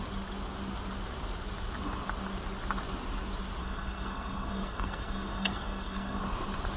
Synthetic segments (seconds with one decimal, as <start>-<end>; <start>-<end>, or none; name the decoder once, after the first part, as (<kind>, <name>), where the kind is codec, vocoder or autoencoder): 3.6-6.2 (codec, SNAC)